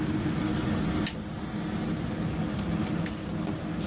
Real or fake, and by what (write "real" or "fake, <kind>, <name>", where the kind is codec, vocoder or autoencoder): real